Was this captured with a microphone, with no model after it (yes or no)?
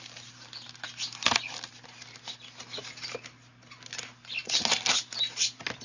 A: yes